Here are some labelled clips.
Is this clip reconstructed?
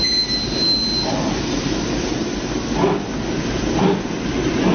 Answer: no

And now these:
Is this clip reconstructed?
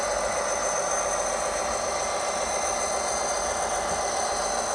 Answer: no